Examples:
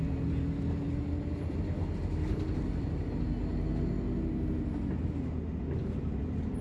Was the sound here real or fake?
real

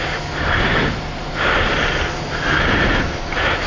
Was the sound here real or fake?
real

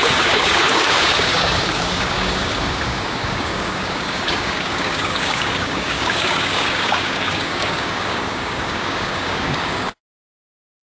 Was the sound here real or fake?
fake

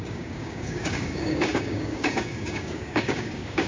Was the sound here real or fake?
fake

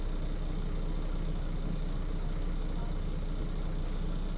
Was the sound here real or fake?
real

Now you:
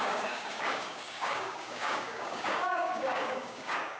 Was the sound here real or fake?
fake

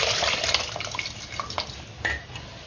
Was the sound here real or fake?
real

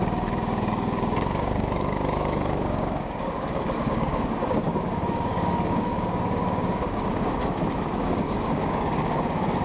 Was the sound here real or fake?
fake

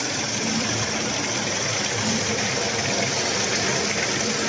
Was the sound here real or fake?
real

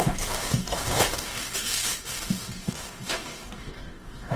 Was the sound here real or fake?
fake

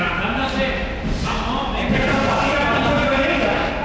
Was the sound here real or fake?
real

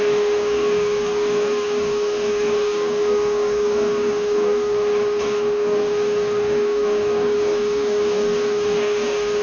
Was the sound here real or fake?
fake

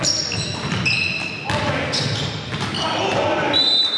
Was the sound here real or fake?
real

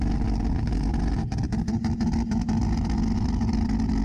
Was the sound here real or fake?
real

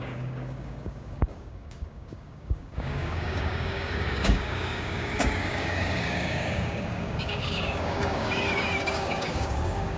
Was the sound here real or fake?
fake